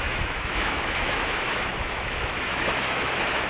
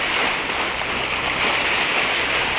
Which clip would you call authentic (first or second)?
second